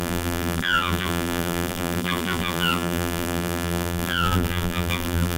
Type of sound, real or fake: fake